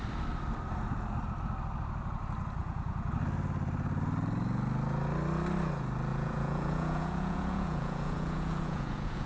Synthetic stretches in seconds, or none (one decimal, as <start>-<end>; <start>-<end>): 2.6-3.1; 6.1-9.3